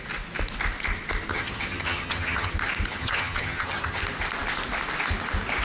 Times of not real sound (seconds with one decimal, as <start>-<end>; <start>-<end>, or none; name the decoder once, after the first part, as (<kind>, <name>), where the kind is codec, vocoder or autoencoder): 1.3-2.5 (vocoder, HiFi-GAN); 2.9-4.0